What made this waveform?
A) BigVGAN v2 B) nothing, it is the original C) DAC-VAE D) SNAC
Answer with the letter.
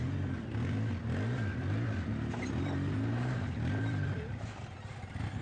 A